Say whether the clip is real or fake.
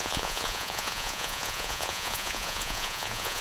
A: fake